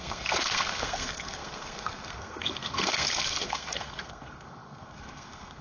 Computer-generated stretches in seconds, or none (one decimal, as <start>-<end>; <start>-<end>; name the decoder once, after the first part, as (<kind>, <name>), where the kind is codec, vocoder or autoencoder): 0.0-5.6 (codec, SNAC)